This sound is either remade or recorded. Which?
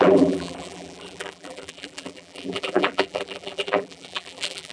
remade